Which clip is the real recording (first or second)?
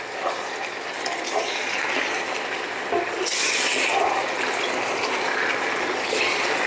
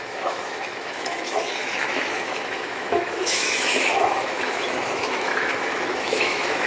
first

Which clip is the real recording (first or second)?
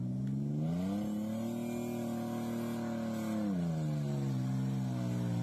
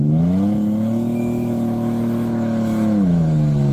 first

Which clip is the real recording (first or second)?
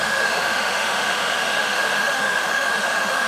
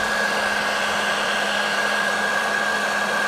second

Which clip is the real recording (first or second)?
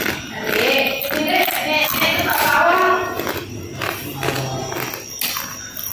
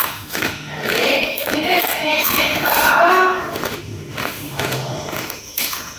first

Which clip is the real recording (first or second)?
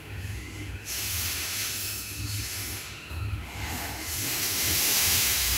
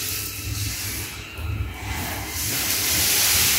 second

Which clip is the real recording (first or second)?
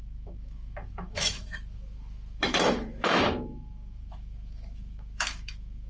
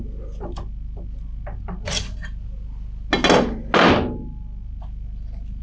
second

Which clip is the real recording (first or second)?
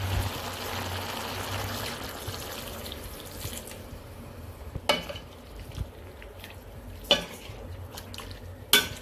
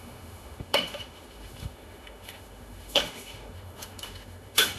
first